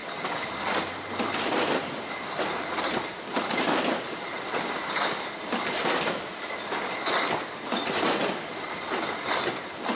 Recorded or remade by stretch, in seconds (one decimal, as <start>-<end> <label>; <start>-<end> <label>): 0.0-10.0 recorded